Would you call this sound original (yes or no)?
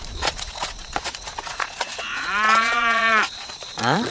no